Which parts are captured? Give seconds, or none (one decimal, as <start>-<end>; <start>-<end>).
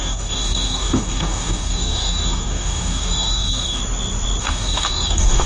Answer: 3.8-4.4